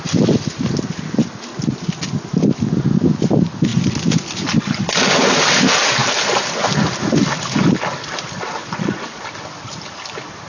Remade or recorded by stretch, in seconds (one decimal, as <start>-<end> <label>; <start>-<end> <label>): 0.0-8.6 recorded; 8.6-9.2 remade; 9.2-10.5 recorded